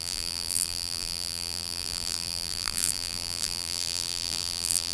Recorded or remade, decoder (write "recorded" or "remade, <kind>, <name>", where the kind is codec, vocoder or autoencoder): remade, vocoder, BigVGAN v2